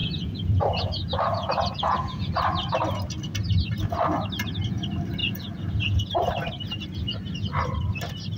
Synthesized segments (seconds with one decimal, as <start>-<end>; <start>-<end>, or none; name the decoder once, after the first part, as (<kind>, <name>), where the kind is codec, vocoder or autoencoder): 0.0-2.3 (vocoder, Vocos); 5.2-6.3